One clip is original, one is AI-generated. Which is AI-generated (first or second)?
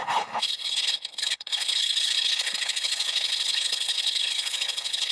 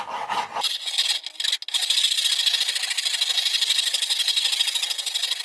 first